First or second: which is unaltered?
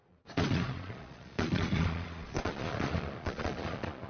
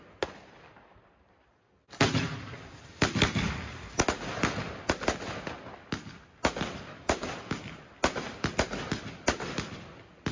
second